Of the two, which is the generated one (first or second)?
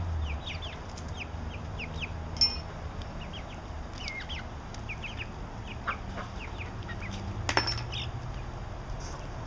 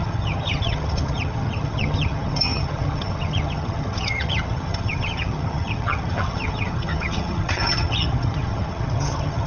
second